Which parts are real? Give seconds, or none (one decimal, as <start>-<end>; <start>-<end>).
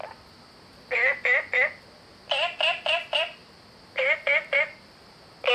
0.0-5.5